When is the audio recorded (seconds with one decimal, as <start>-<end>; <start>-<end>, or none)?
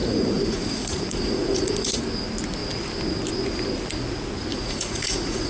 2.0-4.5